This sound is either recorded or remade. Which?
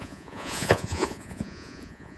remade